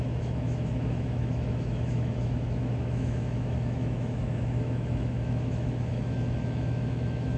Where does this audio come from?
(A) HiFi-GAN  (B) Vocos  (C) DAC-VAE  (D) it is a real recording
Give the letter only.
C